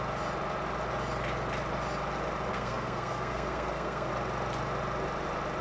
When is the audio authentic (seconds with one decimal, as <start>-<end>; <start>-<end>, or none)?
0.0-2.5; 4.1-5.6